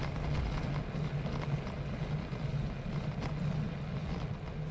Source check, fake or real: real